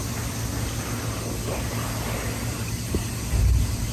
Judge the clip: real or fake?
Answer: real